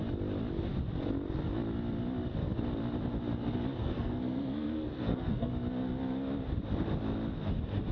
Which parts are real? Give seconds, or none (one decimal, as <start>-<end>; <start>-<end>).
0.0-3.8; 5.5-7.9